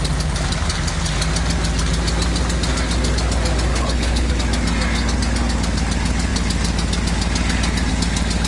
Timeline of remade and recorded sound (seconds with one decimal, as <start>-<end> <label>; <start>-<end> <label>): 0.0-3.7 recorded; 3.7-4.3 remade; 4.3-8.5 recorded